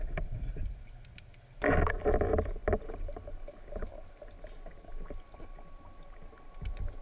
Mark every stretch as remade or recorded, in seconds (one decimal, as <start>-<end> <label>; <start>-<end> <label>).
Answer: 0.0-7.0 recorded